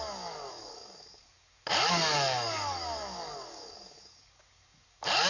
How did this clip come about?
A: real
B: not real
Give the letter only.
B